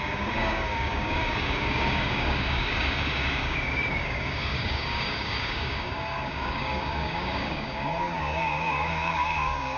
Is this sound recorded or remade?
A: remade